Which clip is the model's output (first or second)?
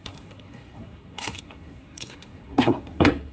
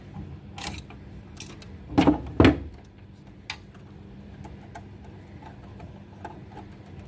first